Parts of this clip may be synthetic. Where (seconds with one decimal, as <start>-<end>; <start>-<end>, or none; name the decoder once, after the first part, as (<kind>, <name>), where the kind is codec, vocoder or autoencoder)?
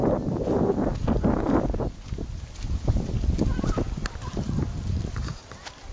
none